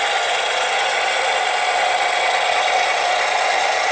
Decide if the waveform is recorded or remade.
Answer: recorded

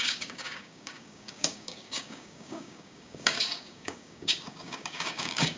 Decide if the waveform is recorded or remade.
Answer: remade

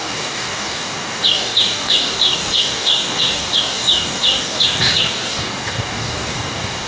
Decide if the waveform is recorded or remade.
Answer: remade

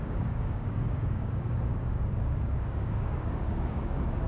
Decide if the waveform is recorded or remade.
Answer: remade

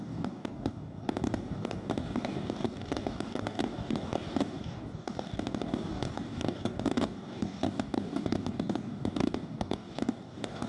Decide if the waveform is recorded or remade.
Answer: remade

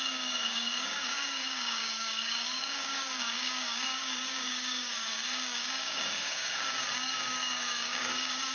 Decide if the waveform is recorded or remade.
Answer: remade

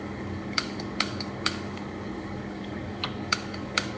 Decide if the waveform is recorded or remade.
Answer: remade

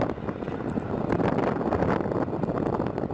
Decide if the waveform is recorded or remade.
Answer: recorded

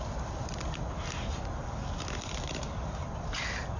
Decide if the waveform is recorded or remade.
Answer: recorded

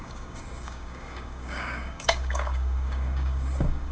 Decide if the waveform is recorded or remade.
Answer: remade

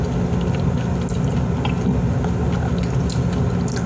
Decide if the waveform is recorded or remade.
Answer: recorded